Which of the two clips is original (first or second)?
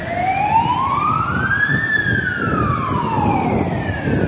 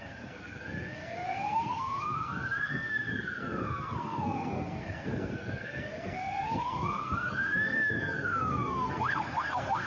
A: first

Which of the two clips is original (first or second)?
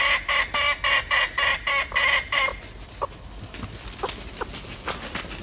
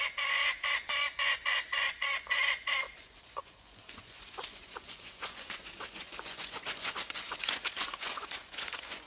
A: first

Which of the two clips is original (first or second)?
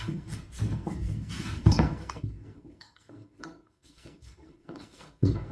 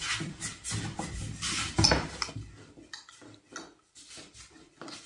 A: second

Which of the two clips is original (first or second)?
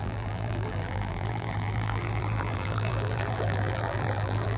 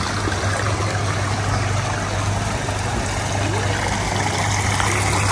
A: second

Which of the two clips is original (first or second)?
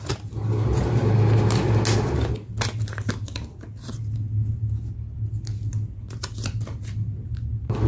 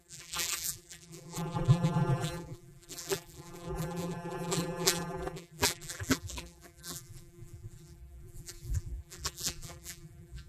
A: first